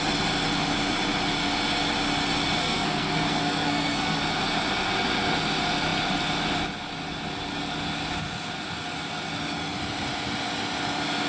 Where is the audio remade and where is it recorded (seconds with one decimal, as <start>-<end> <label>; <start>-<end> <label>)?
0.0-2.6 recorded; 2.6-4.2 remade; 4.2-11.3 recorded